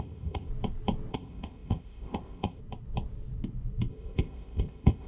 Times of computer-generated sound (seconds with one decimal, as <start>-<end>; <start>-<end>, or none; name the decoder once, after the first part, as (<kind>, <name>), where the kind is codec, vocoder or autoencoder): 0.0-0.5 (codec, ZipCodec); 1.1-2.6; 3.9-5.1